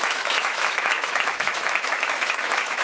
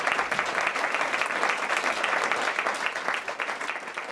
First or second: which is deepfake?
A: first